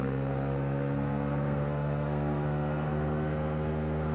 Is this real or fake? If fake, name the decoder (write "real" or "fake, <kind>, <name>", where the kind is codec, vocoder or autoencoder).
fake, codec, SNAC